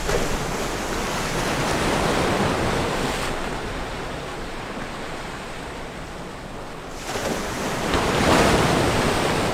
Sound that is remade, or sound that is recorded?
recorded